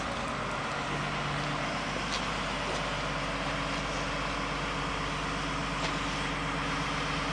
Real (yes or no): yes